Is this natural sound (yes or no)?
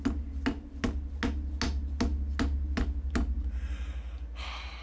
yes